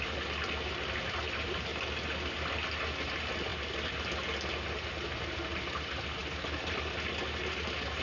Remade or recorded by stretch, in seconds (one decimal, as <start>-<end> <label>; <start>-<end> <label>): 0.0-8.0 recorded